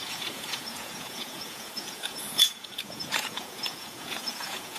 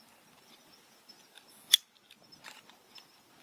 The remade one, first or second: first